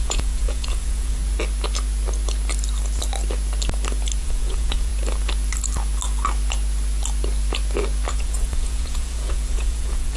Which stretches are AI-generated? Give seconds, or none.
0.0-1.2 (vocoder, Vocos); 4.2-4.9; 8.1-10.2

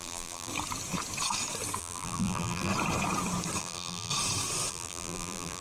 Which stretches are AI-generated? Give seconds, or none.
0.0-0.5 (vocoder, BigVGAN v2); 1.8-2.7; 3.6-4.1; 4.7-5.6

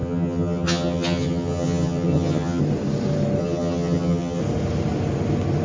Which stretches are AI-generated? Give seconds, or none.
0.0-2.6 (vocoder, HiFi-GAN); 3.4-4.4

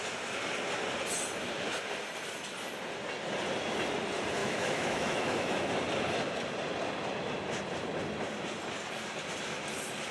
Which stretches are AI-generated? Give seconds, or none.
4.4-5.7 (autoencoder, DAC-VAE)

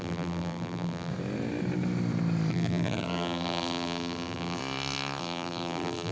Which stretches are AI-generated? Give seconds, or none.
0.0-1.1 (vocoder, BigVGAN v2); 2.5-4.6; 5.2-6.1

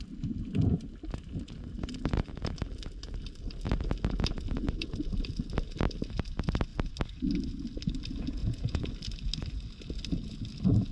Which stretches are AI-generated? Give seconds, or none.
8.4-8.9 (vocoder, Vocos)

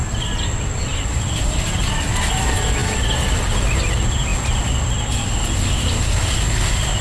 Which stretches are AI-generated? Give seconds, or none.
none